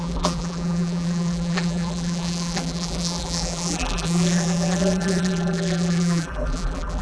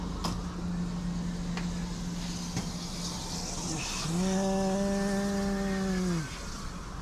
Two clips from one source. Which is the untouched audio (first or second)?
second